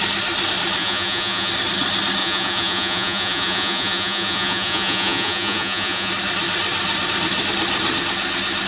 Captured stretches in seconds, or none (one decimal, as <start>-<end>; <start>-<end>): 0.0-0.8; 1.5-2.2; 6.1-8.7